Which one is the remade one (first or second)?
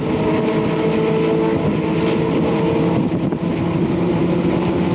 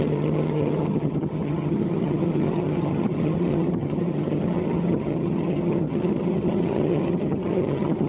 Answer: second